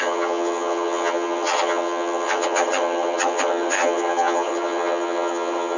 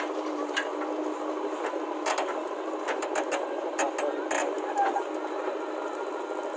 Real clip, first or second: second